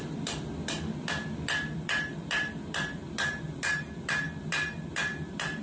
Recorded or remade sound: remade